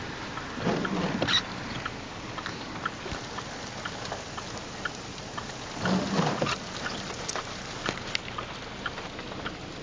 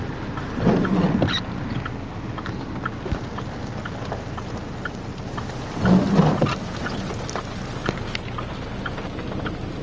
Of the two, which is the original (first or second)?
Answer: second